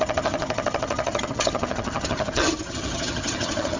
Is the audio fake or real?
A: fake